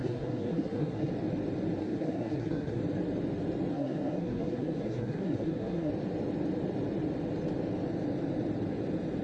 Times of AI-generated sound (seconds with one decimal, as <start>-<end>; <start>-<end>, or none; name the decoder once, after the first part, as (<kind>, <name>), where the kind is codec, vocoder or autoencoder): 0.0-1.1 (codec, SNAC); 1.8-2.8; 3.7-5.9